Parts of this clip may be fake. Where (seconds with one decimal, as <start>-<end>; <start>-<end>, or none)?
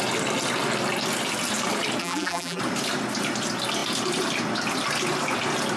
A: 2.0-2.6